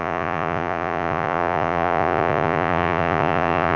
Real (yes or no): no